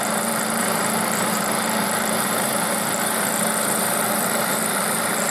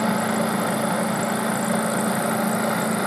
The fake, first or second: first